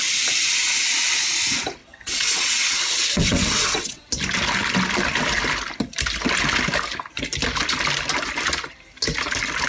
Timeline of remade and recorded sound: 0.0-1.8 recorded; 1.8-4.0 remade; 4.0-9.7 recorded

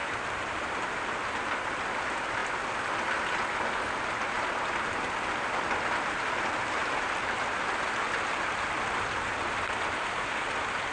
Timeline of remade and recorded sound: 0.0-0.8 remade; 0.8-10.9 recorded

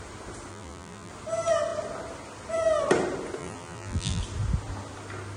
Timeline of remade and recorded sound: 0.0-0.5 recorded; 0.5-1.1 remade; 1.1-3.4 recorded; 3.4-4.2 remade; 4.2-5.4 recorded

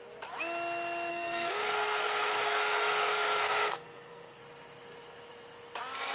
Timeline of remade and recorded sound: 0.0-1.1 recorded; 1.1-4.4 remade; 4.4-6.1 recorded

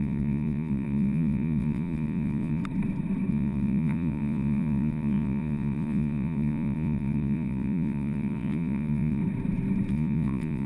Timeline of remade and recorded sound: 0.0-2.6 remade; 2.6-3.3 recorded; 3.3-9.2 remade; 9.2-9.9 recorded; 9.9-10.7 remade

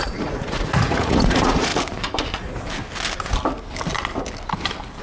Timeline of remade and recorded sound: 0.0-1.7 remade; 1.7-5.0 recorded

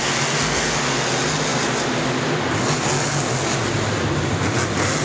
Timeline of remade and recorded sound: 0.0-5.0 recorded